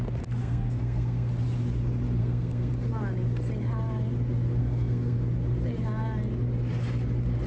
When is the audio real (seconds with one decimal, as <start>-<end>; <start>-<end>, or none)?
0.0-0.4; 1.3-2.2; 2.7-4.6; 5.2-7.5